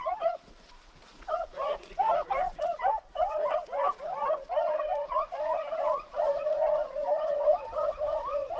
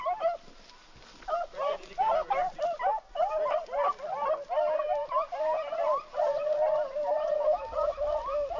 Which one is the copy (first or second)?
first